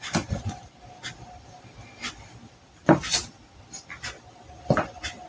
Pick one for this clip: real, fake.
real